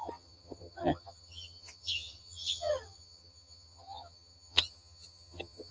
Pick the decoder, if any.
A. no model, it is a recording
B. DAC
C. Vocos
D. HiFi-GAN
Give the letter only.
D